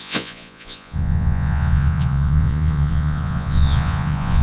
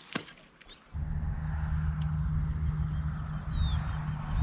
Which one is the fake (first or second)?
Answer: first